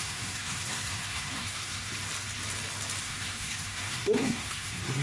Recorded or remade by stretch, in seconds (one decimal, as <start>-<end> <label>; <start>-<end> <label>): 0.0-1.9 remade; 1.9-3.0 recorded; 3.0-5.0 remade